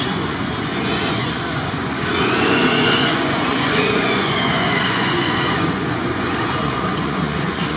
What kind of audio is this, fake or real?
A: fake